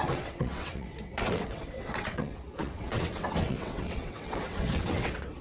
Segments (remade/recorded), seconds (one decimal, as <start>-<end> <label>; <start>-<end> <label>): 0.0-5.4 remade